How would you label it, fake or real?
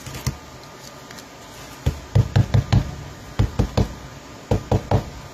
real